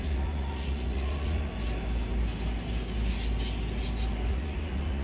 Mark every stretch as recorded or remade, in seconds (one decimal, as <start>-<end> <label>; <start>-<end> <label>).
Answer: 0.0-1.5 remade; 1.5-4.3 recorded; 4.3-5.0 remade